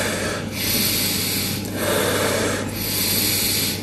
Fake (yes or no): no